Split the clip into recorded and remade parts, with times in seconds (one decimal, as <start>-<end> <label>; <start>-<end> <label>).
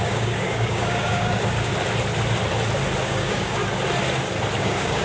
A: 0.0-1.7 remade; 1.7-3.0 recorded; 3.0-3.6 remade; 3.6-4.6 recorded; 4.6-5.0 remade